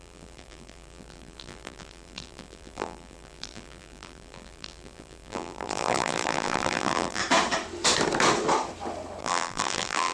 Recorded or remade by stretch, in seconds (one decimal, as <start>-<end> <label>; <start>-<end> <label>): 0.0-7.2 remade; 7.2-9.2 recorded; 9.2-10.1 remade